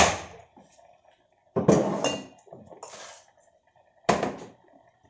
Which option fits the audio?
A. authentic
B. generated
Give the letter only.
A